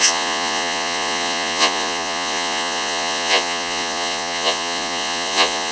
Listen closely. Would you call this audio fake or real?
fake